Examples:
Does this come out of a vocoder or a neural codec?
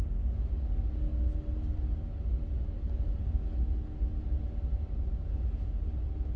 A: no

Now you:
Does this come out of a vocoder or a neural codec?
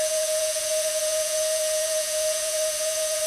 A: yes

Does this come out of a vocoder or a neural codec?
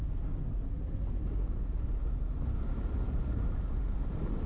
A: no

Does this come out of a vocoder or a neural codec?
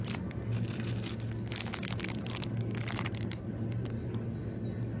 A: no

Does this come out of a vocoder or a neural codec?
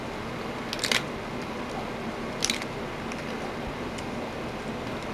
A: no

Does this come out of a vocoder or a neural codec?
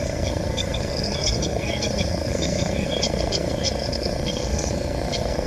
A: yes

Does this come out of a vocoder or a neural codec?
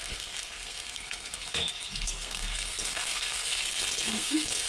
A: yes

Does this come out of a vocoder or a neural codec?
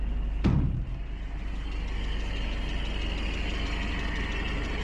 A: no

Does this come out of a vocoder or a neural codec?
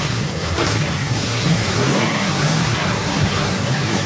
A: yes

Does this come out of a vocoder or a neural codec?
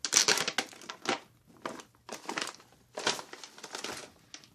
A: no